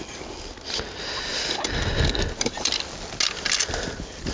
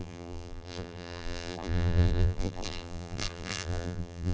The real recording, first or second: first